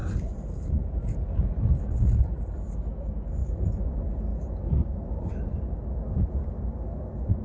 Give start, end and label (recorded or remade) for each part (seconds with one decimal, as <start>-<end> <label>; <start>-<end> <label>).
0.0-2.8 remade; 2.8-3.4 recorded; 3.4-3.9 remade; 3.9-4.3 recorded; 4.3-5.3 remade; 5.3-7.4 recorded